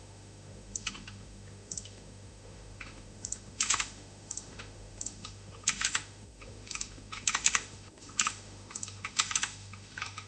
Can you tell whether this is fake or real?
fake